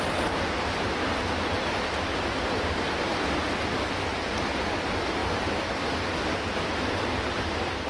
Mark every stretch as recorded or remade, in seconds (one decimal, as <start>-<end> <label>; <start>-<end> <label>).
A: 0.0-7.9 recorded

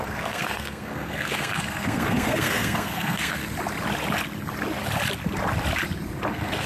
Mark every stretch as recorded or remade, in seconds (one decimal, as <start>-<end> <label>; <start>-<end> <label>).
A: 0.0-3.4 remade; 3.4-6.3 recorded; 6.3-6.7 remade

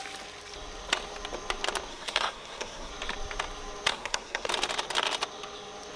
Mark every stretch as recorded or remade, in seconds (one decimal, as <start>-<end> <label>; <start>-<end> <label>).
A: 0.0-1.9 recorded; 1.9-2.9 remade; 2.9-3.9 recorded; 3.9-4.5 remade; 4.5-6.0 recorded